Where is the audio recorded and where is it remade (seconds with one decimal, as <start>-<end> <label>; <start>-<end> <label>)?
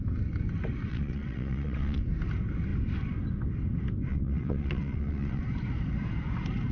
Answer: 0.0-0.9 recorded; 0.9-2.0 remade; 2.0-4.1 recorded; 4.1-5.4 remade; 5.4-6.7 recorded